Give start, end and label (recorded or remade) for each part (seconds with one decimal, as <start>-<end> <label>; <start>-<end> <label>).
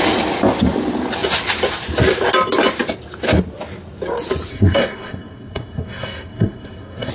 0.0-4.5 recorded; 4.5-7.1 remade